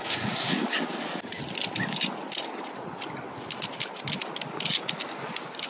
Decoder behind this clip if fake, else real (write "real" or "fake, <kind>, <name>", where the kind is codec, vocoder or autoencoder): real